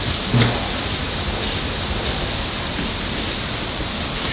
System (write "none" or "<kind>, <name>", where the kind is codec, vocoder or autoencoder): none